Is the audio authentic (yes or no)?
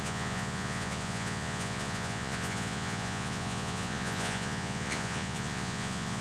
no